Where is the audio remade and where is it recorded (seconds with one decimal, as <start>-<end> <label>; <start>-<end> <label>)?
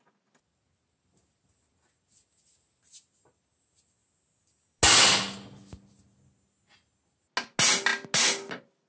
0.0-8.9 recorded